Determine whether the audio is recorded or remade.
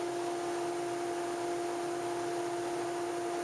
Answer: recorded